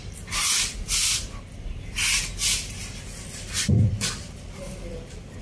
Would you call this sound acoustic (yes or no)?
yes